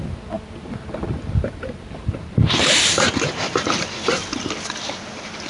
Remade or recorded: recorded